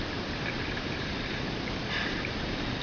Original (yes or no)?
yes